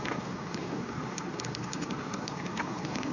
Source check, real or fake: fake